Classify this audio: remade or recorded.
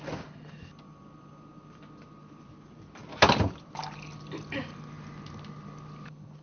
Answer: recorded